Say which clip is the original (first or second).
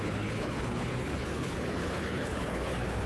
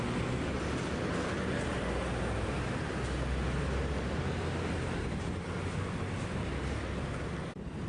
second